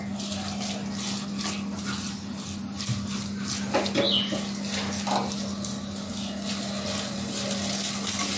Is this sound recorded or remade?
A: recorded